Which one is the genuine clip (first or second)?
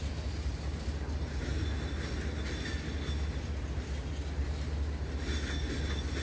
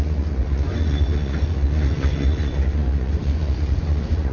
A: first